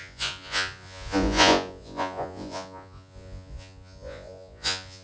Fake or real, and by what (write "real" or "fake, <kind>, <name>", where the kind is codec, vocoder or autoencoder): fake, vocoder, Vocos